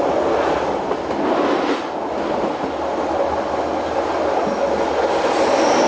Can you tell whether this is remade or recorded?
recorded